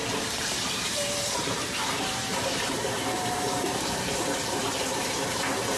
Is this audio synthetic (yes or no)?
yes